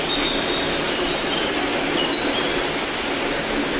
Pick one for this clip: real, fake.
real